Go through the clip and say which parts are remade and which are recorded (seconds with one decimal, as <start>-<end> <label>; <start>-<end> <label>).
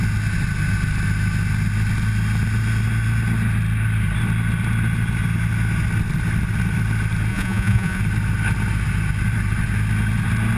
0.0-7.3 recorded; 7.3-8.0 remade; 8.0-10.6 recorded